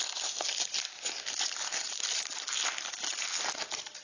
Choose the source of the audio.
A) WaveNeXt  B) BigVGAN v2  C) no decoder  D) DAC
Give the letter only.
C